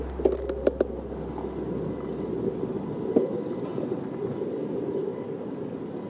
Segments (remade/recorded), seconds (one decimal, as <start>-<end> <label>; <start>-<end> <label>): 0.0-6.1 recorded